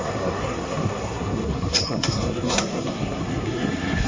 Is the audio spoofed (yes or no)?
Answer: yes